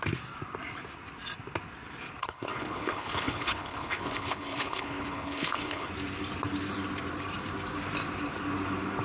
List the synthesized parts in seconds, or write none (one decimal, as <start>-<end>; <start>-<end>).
2.2-5.9